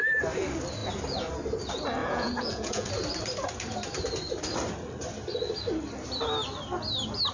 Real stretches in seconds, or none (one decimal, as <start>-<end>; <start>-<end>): 0.0-2.0; 2.9-7.3